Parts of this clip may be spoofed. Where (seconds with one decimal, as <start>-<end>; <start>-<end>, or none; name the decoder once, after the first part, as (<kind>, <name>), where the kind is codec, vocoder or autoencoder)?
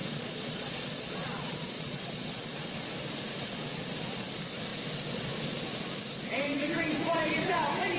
0.0-2.4 (vocoder, Vocos)